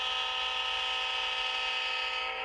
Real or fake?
real